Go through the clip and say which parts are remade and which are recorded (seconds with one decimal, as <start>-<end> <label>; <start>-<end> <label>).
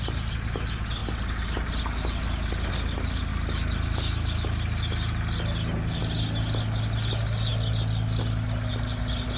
0.0-9.4 recorded